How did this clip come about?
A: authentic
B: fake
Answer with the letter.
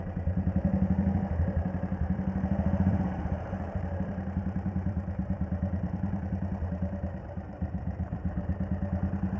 B